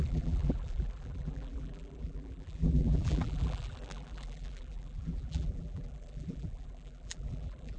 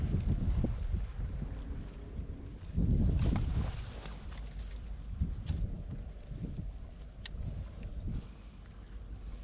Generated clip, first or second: first